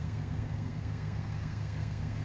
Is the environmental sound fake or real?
fake